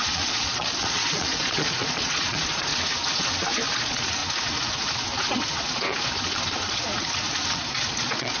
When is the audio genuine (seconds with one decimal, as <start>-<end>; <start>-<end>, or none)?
2.7-3.8; 4.2-7.9